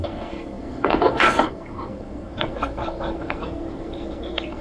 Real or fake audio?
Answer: fake